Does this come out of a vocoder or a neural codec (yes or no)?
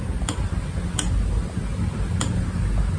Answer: no